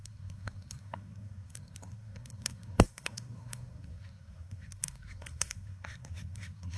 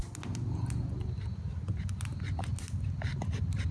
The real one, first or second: second